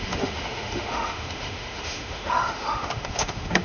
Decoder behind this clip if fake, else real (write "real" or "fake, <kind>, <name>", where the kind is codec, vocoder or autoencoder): fake, autoencoder, DAC-VAE